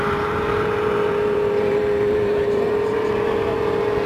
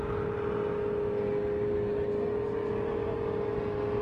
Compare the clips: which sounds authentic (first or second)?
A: second